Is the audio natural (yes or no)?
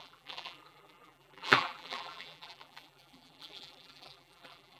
no